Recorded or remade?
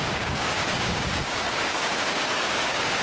remade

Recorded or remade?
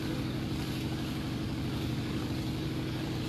remade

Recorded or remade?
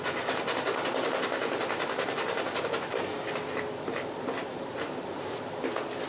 recorded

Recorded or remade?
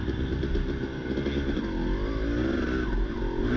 recorded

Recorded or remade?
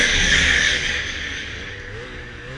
remade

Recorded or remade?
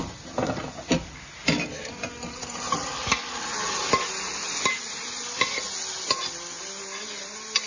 recorded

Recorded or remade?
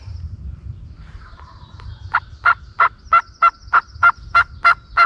recorded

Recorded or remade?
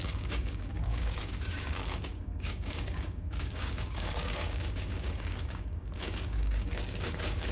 remade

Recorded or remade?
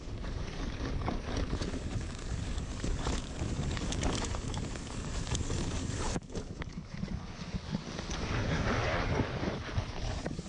remade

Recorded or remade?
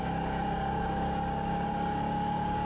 remade